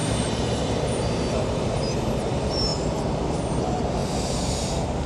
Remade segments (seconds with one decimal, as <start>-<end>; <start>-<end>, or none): 0.0-5.1